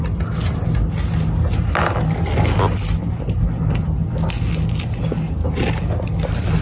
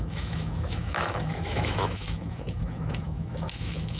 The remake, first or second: second